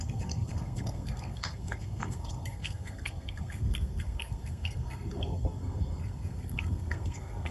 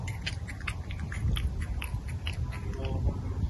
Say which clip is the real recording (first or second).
second